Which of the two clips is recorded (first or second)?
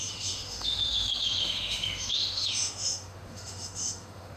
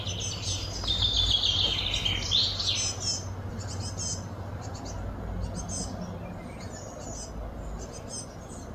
second